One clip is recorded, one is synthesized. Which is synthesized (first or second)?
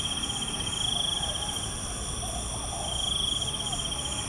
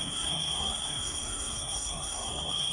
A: second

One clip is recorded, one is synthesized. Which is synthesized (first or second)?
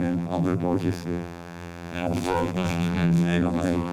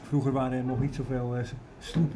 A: first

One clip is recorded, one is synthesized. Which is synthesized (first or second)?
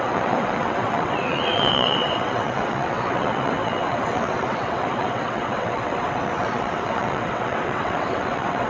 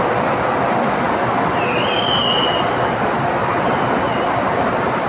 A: first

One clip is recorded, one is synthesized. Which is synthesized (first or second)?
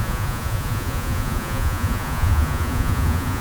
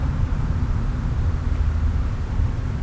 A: first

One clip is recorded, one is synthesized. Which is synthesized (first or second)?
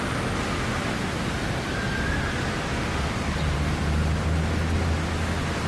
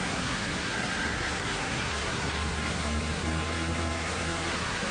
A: second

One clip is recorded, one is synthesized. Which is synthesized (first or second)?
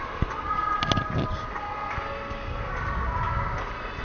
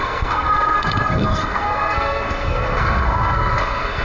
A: second